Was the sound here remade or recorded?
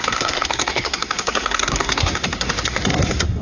remade